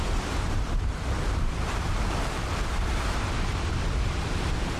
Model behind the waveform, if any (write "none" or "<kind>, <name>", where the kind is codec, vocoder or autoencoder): vocoder, BigVGAN v2